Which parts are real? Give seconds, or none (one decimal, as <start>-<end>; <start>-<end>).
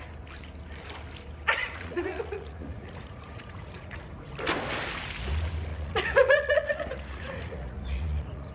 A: 0.0-1.6; 4.1-5.7